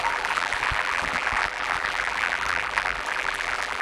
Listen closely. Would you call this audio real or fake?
fake